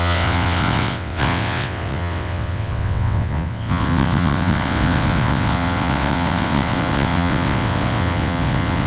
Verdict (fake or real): fake